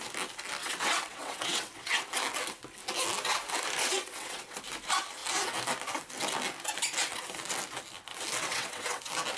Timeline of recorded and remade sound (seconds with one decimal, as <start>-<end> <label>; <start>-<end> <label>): 0.0-0.6 recorded; 0.6-2.0 remade; 2.0-3.8 recorded; 3.8-4.6 remade; 4.6-8.4 recorded; 8.4-9.0 remade; 9.0-9.4 recorded